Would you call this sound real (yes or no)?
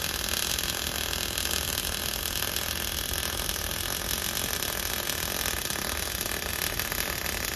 yes